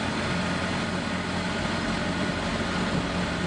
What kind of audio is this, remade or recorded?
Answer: recorded